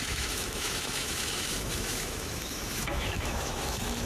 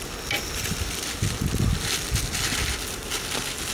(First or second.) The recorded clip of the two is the second